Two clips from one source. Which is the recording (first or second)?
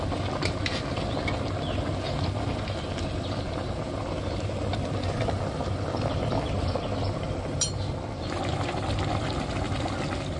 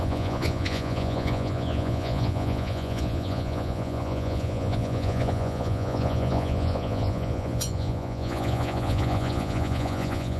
first